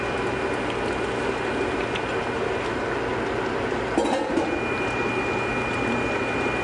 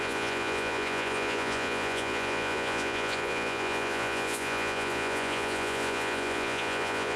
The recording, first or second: first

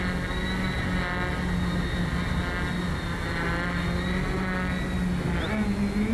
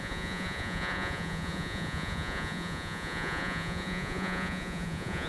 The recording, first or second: first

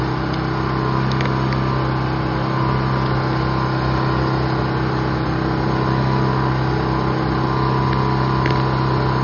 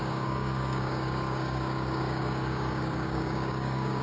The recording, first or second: first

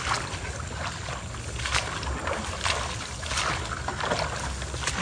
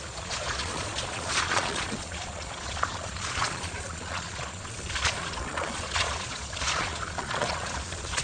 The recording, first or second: first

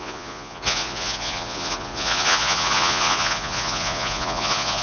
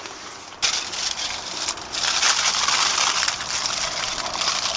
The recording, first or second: second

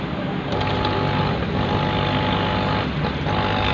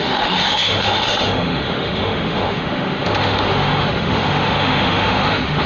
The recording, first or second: first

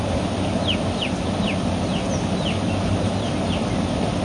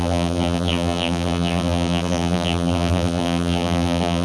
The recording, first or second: first